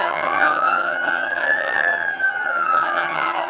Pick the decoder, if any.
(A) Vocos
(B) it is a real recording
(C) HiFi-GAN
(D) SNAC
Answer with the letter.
C